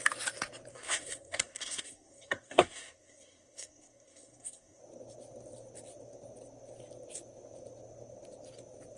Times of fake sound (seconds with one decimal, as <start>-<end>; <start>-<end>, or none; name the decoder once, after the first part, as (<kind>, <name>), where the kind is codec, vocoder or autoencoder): 0.7-4.8 (codec, SNAC)